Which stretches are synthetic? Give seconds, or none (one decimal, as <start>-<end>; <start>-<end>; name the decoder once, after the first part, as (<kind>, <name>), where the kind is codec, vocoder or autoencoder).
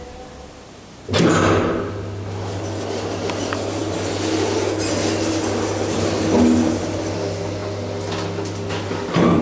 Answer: none